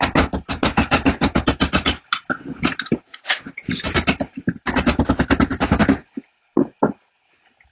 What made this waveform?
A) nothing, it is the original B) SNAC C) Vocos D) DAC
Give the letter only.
A